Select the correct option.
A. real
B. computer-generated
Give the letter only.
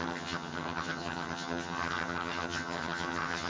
B